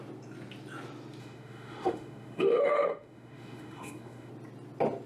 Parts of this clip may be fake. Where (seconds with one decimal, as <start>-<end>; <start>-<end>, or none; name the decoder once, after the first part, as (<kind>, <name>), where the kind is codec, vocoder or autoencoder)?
1.2-4.3 (autoencoder, DAC-VAE)